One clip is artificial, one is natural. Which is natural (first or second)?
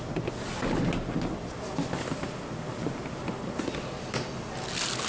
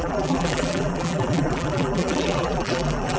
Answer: first